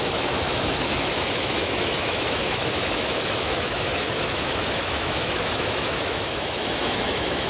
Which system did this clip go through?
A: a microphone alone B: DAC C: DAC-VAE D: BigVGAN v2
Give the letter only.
C